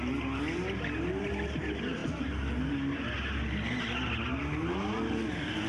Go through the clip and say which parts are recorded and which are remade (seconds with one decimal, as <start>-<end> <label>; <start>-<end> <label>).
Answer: 0.0-5.7 recorded